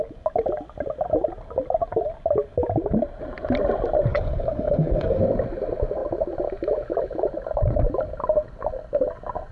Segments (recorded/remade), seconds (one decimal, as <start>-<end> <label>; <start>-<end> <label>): 0.0-4.1 recorded; 4.1-5.2 remade; 5.2-9.5 recorded